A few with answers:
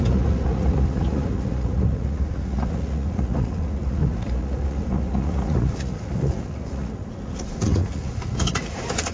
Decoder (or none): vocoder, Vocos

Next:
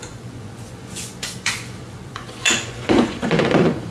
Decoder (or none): vocoder, Vocos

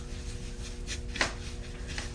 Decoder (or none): none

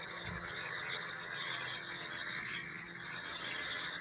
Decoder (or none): vocoder, WaveNeXt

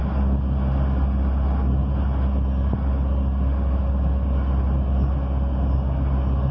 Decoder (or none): none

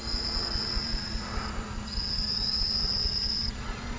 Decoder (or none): vocoder, Vocos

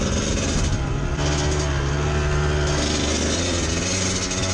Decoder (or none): none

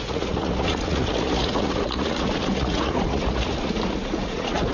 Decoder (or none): vocoder, Vocos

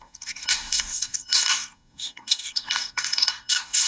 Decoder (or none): codec, SNAC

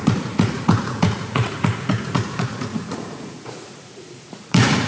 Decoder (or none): vocoder, Vocos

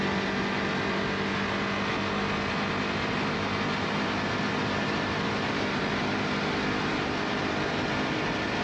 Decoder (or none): none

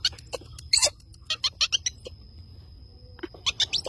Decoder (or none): none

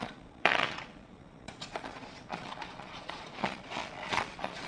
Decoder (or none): vocoder, Vocos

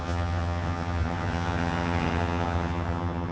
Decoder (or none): vocoder, HiFi-GAN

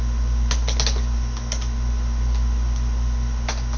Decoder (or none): none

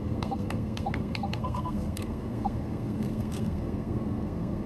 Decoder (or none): codec, SNAC